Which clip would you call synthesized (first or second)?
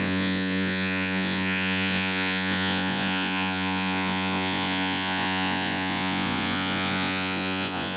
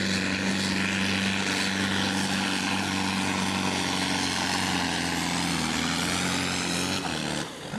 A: first